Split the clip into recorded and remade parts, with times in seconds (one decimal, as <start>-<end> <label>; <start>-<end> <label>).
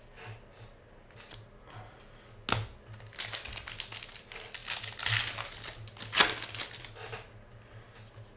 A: 0.0-8.4 recorded